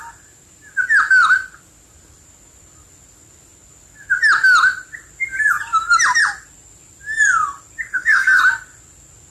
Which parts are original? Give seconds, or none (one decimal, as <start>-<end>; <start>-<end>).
0.0-7.9; 8.4-9.3